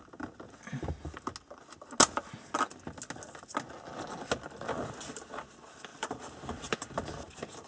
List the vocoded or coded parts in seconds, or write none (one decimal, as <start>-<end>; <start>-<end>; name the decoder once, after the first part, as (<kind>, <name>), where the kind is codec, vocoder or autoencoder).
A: 5.9-7.0 (vocoder, BigVGAN v2)